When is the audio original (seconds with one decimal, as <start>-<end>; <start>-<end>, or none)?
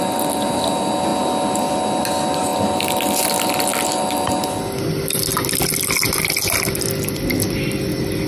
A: 0.0-8.3